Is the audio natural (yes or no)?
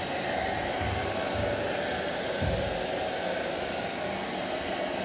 yes